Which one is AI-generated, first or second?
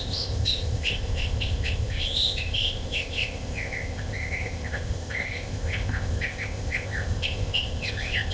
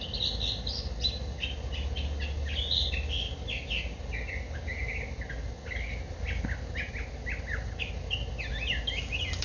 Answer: first